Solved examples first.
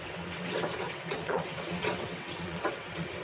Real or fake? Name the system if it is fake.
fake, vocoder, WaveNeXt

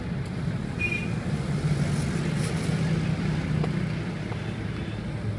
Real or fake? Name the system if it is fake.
real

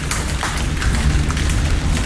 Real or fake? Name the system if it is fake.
real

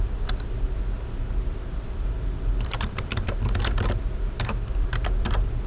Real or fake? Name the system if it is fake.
fake, vocoder, BigVGAN v2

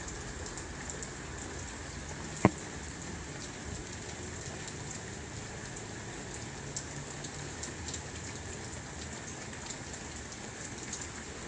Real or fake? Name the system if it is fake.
real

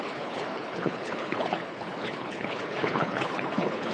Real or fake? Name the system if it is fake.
fake, codec, HILCodec